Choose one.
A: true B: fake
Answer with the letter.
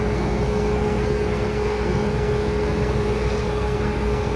B